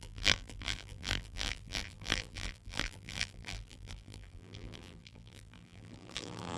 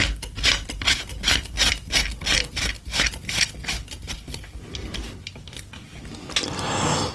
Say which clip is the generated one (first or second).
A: first